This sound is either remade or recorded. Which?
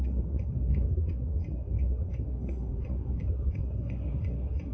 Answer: remade